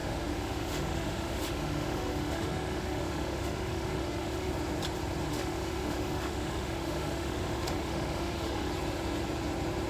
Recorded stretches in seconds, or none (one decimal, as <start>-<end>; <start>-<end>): 4.5-5.3; 8.7-9.9